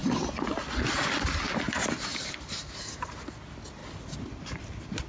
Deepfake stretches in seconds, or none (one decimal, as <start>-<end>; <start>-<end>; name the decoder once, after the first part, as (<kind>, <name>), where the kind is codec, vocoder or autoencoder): none